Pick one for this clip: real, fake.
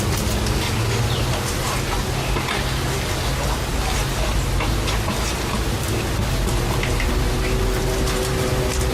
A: real